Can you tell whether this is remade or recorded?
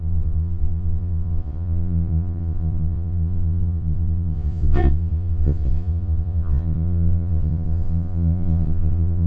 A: remade